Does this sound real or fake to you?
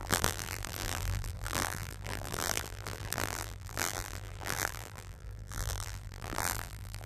fake